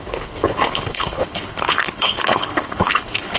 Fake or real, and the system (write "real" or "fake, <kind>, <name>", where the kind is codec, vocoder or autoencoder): fake, codec, HILCodec